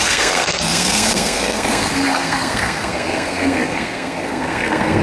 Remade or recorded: remade